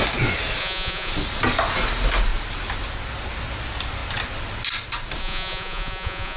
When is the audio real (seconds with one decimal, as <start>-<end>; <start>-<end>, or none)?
0.0-0.6; 1.1-5.2

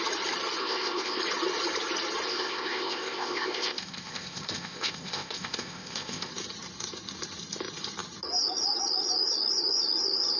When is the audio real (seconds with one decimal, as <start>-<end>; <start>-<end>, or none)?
0.0-0.6; 1.2-2.3; 6.3-10.4

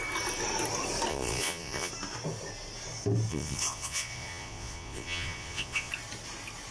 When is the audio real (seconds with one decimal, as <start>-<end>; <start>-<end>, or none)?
0.0-1.1; 1.9-3.3; 5.9-6.7

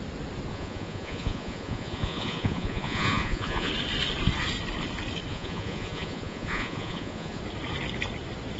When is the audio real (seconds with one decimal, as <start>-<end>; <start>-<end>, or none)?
0.0-0.5; 3.7-5.3; 7.4-8.6

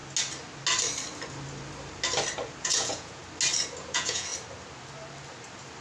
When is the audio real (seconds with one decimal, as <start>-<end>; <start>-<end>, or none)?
0.0-2.6; 3.2-3.8; 4.3-5.8

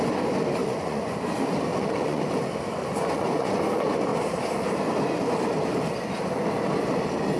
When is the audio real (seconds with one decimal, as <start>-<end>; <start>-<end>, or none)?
0.0-0.6; 1.2-1.7; 2.2-2.8; 3.6-7.4